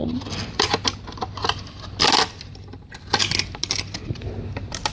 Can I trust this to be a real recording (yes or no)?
yes